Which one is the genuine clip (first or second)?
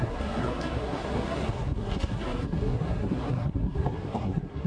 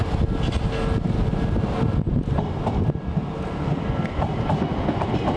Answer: second